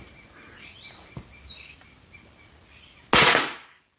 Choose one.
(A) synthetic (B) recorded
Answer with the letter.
B